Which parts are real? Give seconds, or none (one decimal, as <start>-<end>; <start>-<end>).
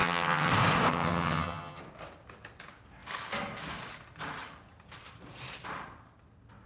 0.5-0.9; 1.8-6.7